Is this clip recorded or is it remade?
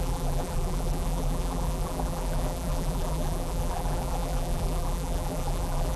remade